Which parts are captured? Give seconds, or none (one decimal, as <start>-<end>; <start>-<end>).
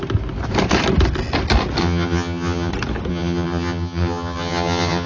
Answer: 0.0-1.8; 2.7-3.1